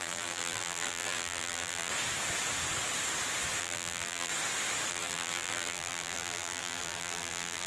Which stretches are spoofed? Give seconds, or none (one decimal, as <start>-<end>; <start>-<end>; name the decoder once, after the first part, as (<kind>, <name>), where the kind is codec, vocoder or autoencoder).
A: 0.0-1.9 (vocoder, BigVGAN v2); 3.6-4.3; 4.9-7.7